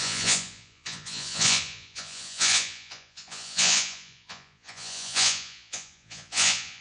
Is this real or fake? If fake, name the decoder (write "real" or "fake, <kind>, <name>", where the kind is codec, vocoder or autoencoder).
fake, vocoder, Vocos